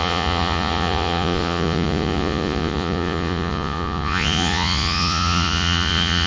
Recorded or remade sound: remade